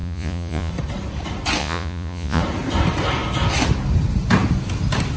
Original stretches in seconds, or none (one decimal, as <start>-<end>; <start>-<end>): 0.7-1.6; 2.4-5.2